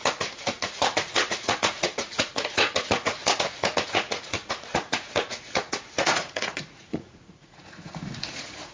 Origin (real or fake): fake